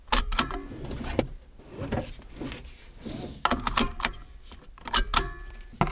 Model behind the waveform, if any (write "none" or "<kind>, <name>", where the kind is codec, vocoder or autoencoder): none